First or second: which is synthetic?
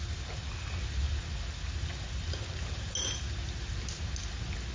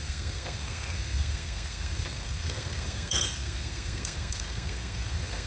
second